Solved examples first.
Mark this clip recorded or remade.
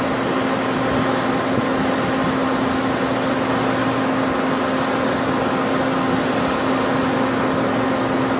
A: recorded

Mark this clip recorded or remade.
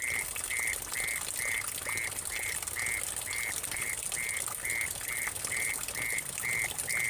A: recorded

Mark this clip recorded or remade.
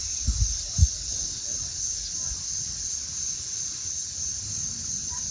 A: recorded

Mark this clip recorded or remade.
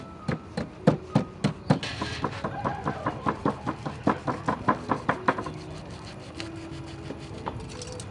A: recorded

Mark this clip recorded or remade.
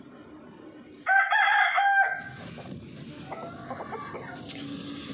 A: recorded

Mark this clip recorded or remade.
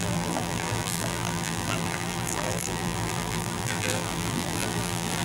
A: remade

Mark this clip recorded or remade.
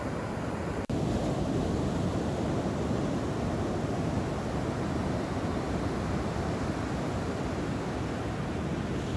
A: recorded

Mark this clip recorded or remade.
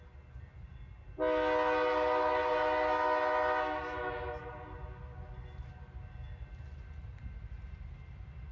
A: recorded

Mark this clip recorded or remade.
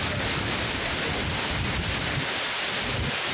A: recorded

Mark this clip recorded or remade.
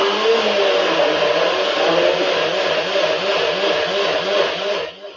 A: recorded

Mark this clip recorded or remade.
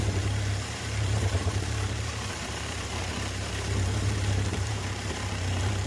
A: remade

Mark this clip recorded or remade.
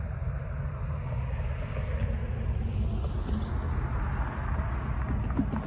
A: recorded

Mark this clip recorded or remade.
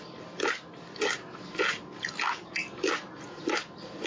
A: recorded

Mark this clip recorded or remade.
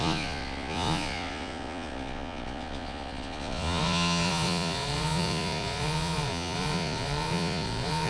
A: remade